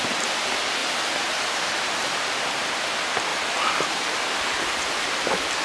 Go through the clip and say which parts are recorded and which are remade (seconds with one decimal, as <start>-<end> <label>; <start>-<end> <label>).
0.0-0.8 recorded; 0.8-2.2 remade; 2.2-3.3 recorded; 3.3-5.6 remade